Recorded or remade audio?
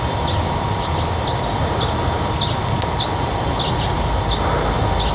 recorded